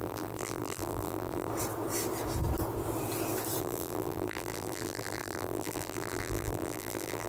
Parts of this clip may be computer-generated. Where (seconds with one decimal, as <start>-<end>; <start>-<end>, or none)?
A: 0.0-1.5; 3.6-7.3